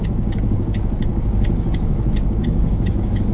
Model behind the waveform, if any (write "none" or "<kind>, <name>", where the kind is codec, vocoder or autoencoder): codec, DAC